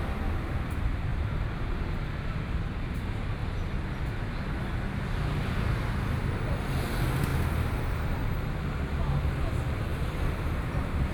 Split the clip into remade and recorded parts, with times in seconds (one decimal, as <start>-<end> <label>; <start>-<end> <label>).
0.0-11.1 recorded